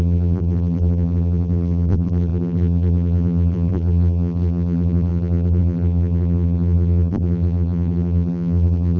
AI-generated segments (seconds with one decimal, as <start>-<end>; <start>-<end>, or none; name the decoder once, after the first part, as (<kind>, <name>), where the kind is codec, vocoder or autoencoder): 0.0-9.0 (vocoder, BigVGAN v2)